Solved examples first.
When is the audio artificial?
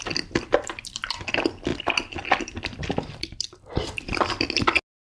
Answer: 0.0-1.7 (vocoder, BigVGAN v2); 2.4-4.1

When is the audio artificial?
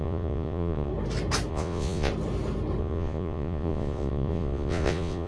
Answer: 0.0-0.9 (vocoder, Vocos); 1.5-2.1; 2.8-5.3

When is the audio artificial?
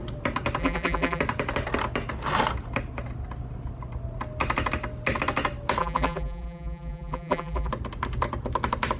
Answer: 0.6-1.2 (vocoder, BigVGAN v2); 5.8-7.7